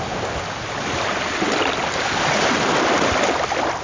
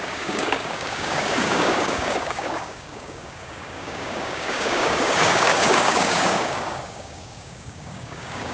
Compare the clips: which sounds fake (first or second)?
second